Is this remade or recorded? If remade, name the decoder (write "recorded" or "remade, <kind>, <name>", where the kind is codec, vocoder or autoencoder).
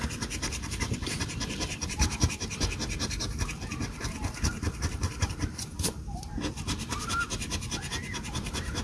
remade, vocoder, BigVGAN v2